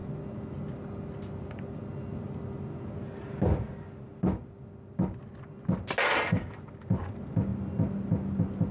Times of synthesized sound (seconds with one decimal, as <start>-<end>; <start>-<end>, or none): none